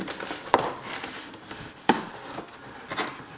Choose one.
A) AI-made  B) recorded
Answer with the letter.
B